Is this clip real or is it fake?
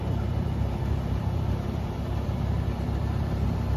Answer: fake